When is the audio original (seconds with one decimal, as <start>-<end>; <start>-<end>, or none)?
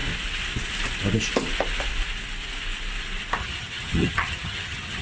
0.0-3.4